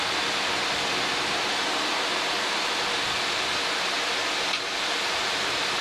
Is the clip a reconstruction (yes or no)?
no